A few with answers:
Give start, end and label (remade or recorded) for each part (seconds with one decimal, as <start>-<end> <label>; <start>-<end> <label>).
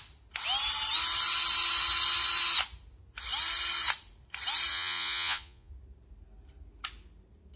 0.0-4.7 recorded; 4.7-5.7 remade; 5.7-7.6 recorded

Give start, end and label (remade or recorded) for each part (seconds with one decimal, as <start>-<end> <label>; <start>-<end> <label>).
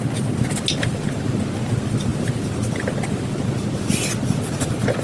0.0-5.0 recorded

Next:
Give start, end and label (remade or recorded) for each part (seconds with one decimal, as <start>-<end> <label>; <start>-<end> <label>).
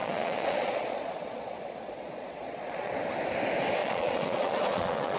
0.0-2.9 remade; 2.9-3.8 recorded; 3.8-5.2 remade